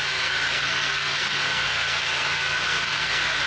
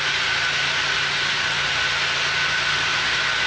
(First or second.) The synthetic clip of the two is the first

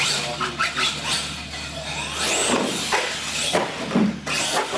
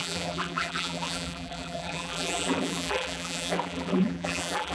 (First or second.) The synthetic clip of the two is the second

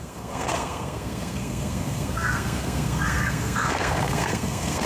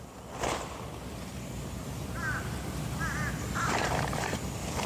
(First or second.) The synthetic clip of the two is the first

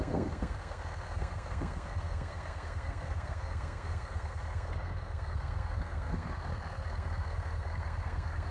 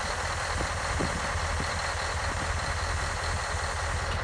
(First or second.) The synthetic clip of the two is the first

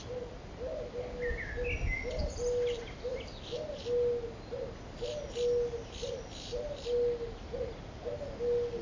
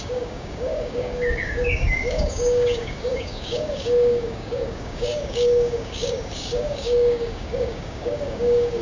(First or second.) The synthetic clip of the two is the second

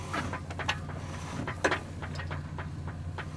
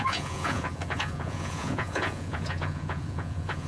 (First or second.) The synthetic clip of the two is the second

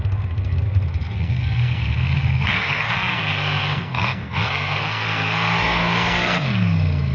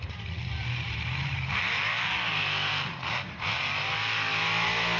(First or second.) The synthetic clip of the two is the first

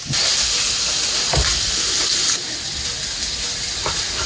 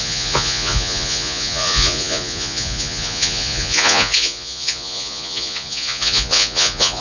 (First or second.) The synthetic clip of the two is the second